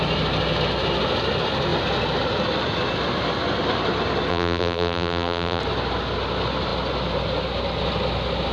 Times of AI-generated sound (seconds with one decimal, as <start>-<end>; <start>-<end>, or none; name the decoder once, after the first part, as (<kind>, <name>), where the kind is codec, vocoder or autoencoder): 4.3-5.6 (vocoder, BigVGAN v2)